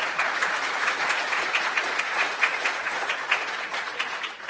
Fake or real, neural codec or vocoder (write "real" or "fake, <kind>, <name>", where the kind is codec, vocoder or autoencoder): fake, vocoder, Vocos